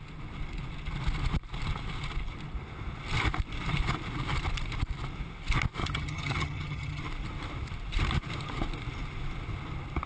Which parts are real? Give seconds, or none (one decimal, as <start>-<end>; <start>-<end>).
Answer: 0.0-5.8; 7.0-10.1